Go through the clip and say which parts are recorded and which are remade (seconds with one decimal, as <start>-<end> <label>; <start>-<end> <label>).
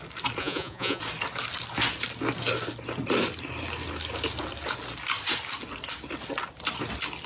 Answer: 0.0-0.4 recorded; 0.4-1.0 remade; 1.0-7.3 recorded